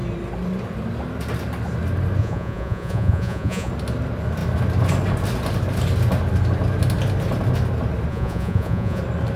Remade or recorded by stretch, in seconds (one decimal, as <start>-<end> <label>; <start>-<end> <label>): 0.0-2.2 recorded; 2.2-3.7 remade; 3.7-8.1 recorded; 8.1-9.0 remade; 9.0-9.4 recorded